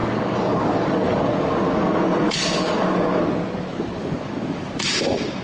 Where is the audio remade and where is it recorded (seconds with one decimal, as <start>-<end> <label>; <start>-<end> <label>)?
0.0-3.2 remade; 3.2-3.7 recorded; 3.7-4.7 remade; 4.7-5.4 recorded